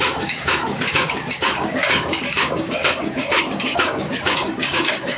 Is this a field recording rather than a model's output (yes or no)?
no